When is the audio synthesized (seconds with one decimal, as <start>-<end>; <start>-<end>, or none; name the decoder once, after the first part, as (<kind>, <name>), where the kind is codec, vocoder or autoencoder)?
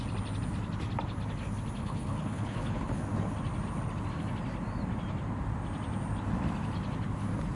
1.8-3.0 (codec, HILCodec)